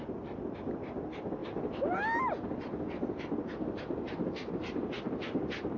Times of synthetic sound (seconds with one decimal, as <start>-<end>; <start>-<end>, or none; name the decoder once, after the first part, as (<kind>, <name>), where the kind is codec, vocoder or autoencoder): none